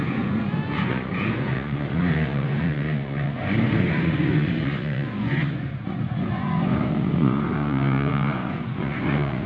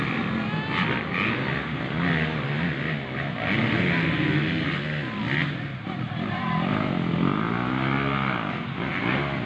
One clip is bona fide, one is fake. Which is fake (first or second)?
first